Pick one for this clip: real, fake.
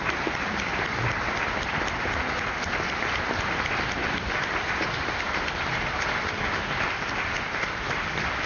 real